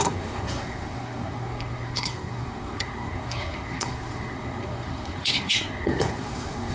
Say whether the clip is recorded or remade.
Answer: remade